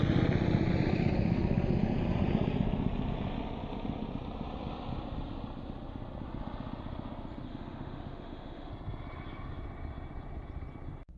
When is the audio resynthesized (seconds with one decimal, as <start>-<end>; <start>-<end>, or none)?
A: 7.5-8.7

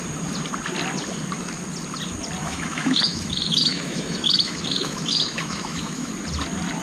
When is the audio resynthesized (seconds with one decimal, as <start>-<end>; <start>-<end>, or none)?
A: 2.4-6.1